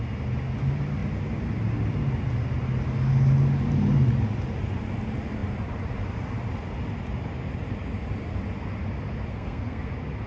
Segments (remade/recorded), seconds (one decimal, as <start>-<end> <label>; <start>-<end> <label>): 0.0-9.3 recorded; 9.3-9.9 remade; 9.9-10.3 recorded